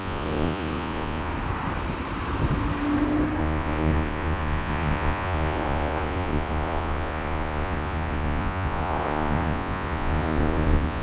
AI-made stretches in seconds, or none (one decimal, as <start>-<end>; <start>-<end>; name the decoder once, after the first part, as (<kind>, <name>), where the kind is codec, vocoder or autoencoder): 0.0-1.3 (vocoder, Vocos); 3.4-11.0